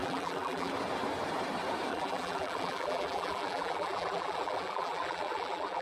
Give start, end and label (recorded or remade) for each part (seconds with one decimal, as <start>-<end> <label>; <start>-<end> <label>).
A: 0.0-0.7 remade; 0.7-1.9 recorded; 1.9-5.8 remade